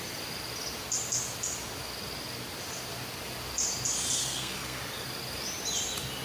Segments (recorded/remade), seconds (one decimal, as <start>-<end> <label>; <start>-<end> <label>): 0.0-4.2 recorded; 4.2-4.8 remade; 4.8-6.2 recorded